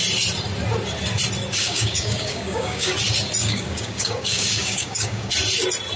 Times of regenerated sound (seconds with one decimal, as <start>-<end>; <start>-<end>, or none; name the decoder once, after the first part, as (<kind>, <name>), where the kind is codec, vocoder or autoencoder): 1.6-2.9 (codec, DAC); 3.4-5.3